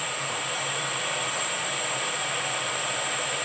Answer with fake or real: fake